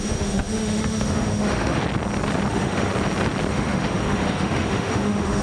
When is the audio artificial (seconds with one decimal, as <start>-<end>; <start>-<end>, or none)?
0.0-1.8; 2.5-2.9; 3.5-5.4